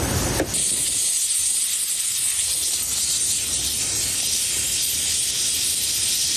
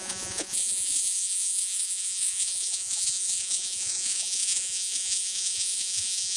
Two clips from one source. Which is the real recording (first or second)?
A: first